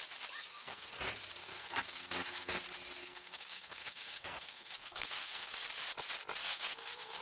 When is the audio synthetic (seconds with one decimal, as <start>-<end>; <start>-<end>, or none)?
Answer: 0.4-0.9; 1.4-2.6; 3.0-5.5; 6.4-7.2